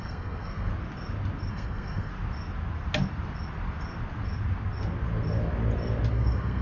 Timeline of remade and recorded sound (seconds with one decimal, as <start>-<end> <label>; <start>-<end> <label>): 0.0-0.7 remade; 0.7-1.5 recorded; 1.5-2.1 remade; 2.1-6.1 recorded; 6.1-6.6 remade